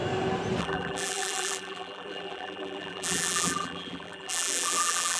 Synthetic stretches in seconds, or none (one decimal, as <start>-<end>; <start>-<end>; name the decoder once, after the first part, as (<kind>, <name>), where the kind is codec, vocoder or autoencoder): 0.6-5.2 (vocoder, BigVGAN v2)